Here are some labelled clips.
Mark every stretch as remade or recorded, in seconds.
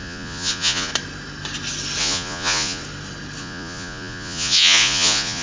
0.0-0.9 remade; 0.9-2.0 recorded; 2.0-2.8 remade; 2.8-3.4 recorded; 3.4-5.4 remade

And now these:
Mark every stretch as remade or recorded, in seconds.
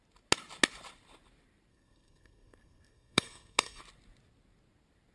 0.0-1.7 recorded; 1.7-3.8 remade; 3.8-5.1 recorded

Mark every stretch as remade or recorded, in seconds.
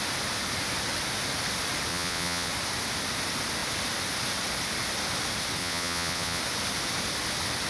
0.0-1.9 recorded; 1.9-2.5 remade; 2.5-5.6 recorded; 5.6-6.4 remade; 6.4-7.7 recorded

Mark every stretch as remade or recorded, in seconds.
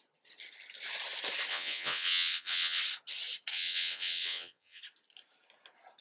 0.0-1.5 recorded; 1.5-2.8 remade; 2.8-3.5 recorded; 3.5-4.8 remade; 4.8-6.0 recorded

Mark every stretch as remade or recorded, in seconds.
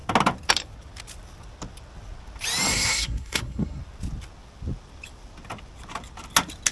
0.0-2.7 recorded; 2.7-3.8 remade; 3.8-6.7 recorded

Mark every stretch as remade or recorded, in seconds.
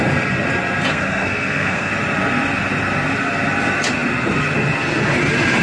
0.0-0.9 recorded; 0.9-1.9 remade; 1.9-5.6 recorded